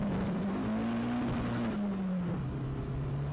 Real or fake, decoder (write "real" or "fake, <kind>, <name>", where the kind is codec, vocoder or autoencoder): real